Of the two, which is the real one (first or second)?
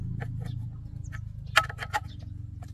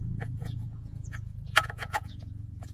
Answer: first